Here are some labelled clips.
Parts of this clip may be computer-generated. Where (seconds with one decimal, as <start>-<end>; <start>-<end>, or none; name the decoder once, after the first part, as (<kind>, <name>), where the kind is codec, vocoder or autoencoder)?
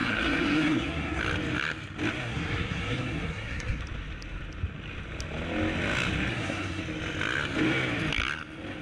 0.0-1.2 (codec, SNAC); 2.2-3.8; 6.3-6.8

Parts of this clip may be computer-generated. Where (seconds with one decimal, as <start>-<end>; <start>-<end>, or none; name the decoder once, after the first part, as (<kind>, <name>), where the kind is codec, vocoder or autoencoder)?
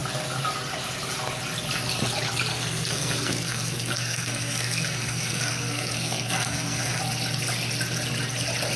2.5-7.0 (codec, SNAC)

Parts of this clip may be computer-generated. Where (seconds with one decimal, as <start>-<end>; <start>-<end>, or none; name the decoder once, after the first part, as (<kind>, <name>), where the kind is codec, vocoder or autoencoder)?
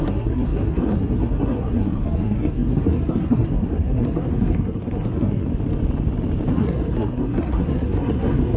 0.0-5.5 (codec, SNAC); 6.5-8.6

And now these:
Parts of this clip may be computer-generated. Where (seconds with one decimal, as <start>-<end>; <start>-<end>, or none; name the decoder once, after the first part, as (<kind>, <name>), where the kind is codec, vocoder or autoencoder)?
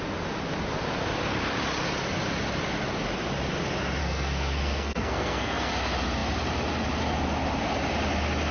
4.0-5.7 (codec, SNAC)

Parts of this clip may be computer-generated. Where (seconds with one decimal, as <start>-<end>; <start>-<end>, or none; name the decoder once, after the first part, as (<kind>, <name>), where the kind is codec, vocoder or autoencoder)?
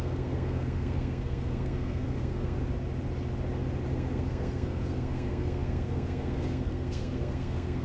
0.0-2.6 (codec, SNAC); 3.9-7.8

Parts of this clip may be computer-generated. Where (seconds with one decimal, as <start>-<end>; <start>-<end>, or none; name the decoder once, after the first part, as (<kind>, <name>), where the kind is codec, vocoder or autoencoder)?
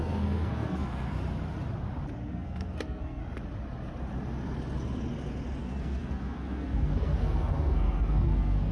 0.0-1.1 (codec, SNAC); 2.3-3.2; 5.6-8.7